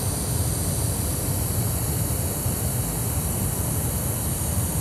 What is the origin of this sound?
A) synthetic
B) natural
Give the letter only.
A